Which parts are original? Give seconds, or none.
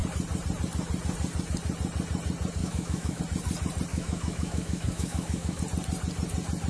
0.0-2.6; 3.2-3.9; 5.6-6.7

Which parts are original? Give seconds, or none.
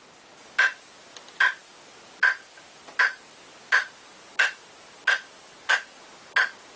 0.0-6.8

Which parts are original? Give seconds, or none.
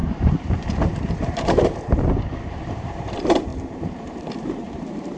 none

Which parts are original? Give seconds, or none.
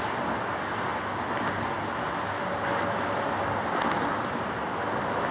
0.0-5.3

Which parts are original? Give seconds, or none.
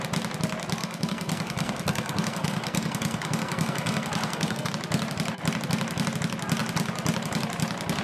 0.0-0.8; 4.7-8.0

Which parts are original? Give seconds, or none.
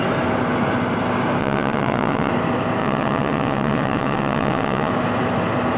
0.0-1.4; 2.3-2.8; 4.9-5.8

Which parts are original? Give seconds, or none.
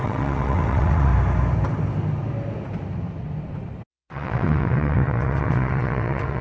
1.1-3.9